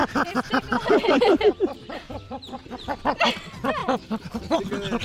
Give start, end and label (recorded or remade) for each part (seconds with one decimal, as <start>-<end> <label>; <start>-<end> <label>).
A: 0.0-3.0 remade; 3.0-3.8 recorded; 3.8-4.6 remade; 4.6-5.0 recorded